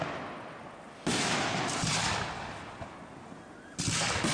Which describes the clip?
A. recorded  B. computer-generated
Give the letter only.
A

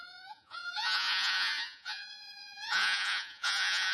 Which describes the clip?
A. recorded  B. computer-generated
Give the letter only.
B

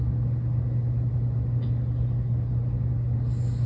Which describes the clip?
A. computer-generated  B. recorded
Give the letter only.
B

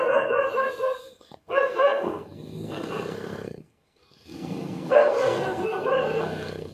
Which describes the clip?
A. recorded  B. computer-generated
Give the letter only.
B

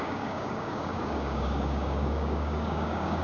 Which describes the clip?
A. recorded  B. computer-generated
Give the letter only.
B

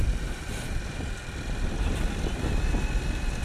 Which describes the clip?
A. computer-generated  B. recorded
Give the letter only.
B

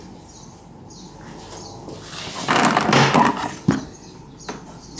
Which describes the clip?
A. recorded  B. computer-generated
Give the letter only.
A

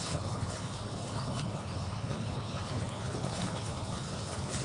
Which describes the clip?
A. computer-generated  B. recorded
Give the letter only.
A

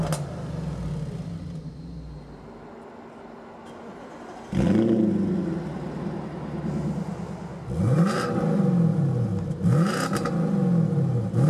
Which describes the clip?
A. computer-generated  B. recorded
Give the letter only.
B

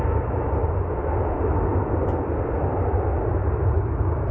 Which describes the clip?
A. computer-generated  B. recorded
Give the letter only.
B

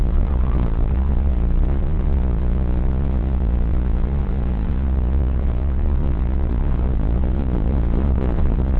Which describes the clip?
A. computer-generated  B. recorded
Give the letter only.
A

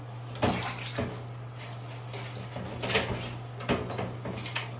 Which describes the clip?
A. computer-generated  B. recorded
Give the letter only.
B